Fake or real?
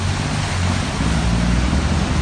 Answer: real